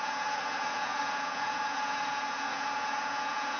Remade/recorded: remade